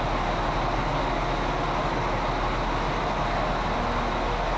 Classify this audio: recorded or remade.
recorded